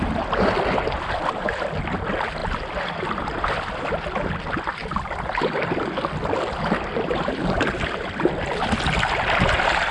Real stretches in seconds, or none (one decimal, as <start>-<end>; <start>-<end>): 0.0-9.9